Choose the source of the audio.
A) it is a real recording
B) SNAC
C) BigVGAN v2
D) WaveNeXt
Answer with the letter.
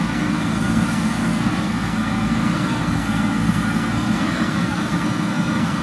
B